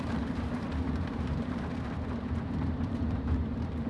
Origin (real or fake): fake